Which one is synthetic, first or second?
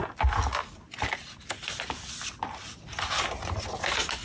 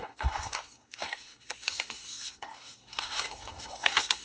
second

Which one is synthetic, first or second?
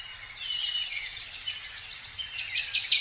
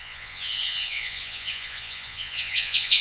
second